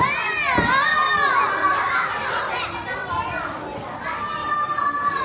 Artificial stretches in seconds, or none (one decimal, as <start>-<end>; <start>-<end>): 3.0-3.6; 4.4-5.2